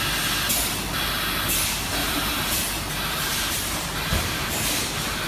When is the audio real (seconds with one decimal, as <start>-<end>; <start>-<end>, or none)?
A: 0.0-2.0